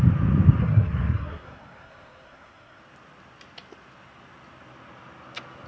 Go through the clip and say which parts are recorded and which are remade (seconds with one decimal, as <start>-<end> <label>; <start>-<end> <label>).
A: 0.0-0.6 recorded; 0.6-2.8 remade; 2.8-5.7 recorded